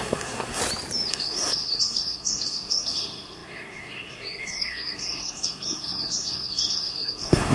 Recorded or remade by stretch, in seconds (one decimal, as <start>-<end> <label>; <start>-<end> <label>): 0.0-0.6 remade; 0.6-1.1 recorded; 1.1-7.5 remade